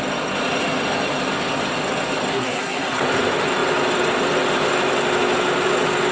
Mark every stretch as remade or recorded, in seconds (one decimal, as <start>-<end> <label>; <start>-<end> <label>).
0.0-2.3 recorded; 2.3-3.0 remade; 3.0-6.1 recorded